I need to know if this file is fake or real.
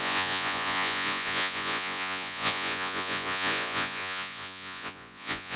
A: fake